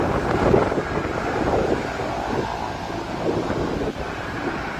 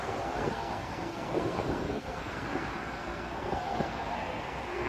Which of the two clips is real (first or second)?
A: first